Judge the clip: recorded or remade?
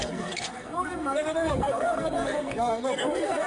remade